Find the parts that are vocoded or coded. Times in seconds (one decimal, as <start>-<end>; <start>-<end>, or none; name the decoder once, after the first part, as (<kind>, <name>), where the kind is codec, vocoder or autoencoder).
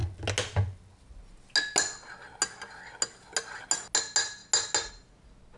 none